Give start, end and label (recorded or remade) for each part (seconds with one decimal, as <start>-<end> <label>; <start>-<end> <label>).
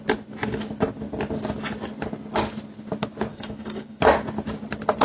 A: 0.0-3.3 recorded; 3.3-4.0 remade; 4.0-5.0 recorded